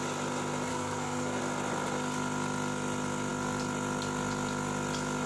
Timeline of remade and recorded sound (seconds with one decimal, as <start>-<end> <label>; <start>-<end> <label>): 0.0-0.7 recorded; 0.7-1.4 remade; 1.4-5.3 recorded